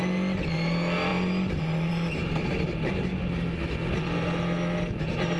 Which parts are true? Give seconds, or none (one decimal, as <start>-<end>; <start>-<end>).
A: 0.0-5.4